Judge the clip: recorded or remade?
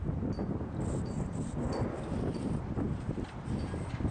remade